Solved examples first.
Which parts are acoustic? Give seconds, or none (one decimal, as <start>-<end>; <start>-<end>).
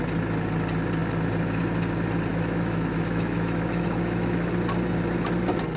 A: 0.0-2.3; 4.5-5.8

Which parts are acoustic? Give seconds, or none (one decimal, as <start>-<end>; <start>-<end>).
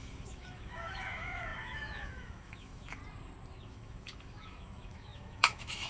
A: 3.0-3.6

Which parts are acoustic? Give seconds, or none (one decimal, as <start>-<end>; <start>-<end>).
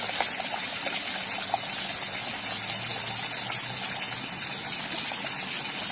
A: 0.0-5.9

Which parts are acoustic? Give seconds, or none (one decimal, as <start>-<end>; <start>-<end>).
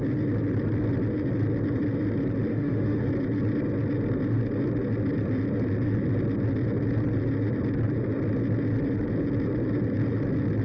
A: 0.0-2.5; 3.0-10.6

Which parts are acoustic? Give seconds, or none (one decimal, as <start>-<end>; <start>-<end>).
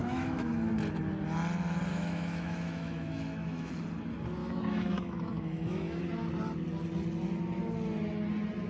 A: 0.7-1.9; 3.7-4.4; 6.0-8.7